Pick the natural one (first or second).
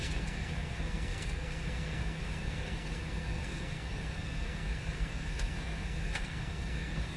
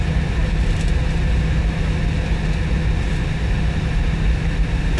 second